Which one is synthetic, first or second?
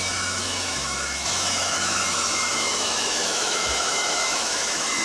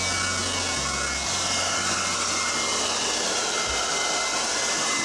first